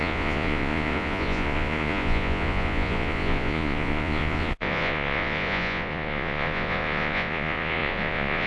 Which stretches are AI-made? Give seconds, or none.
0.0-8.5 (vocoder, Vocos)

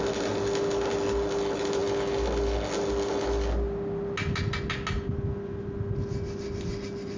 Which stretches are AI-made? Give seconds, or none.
none

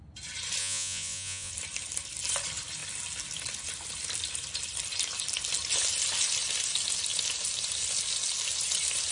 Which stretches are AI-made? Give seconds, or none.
0.6-1.5 (vocoder, Vocos)

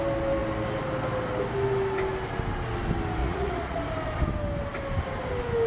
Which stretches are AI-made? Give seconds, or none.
3.2-3.8 (vocoder, Vocos)

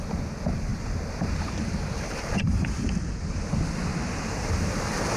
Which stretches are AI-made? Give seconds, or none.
0.7-2.7 (vocoder, BigVGAN v2); 3.9-5.2

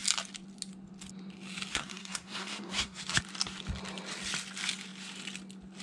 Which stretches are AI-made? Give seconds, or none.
1.7-3.0 (codec, SNAC)

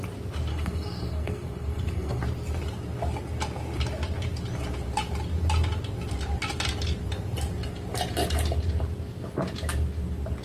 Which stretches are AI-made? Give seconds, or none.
0.5-2.2 (codec, SNAC)

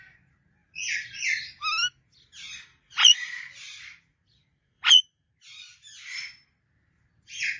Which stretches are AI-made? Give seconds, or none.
0.6-1.2 (vocoder, Vocos); 2.7-3.3; 4.1-5.3